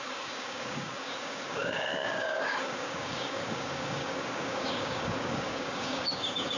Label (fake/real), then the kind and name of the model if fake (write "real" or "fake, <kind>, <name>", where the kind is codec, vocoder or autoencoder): fake, codec, DAC